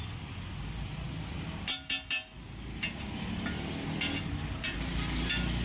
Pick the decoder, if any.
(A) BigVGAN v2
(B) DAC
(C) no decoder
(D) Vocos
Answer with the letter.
C